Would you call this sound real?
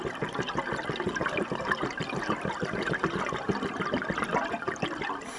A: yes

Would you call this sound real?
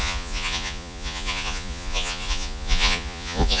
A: no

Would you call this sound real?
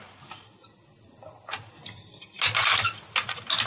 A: yes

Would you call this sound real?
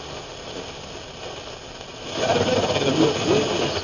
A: yes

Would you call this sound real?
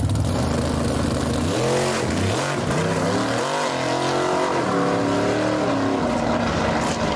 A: yes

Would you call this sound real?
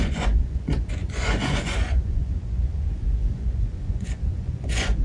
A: no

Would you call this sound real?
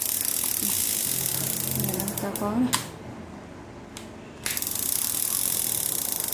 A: yes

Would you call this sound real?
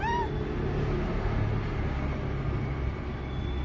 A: yes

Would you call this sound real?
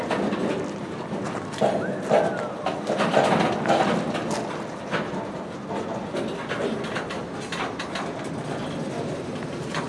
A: yes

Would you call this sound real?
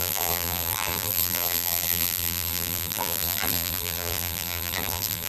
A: no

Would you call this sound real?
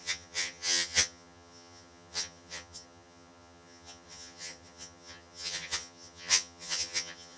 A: no